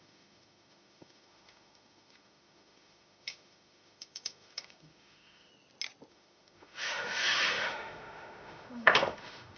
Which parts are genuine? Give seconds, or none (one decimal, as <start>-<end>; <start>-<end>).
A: 5.5-6.1